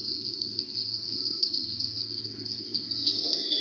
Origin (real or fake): fake